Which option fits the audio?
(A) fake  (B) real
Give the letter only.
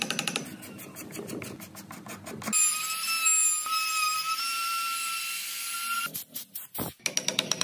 B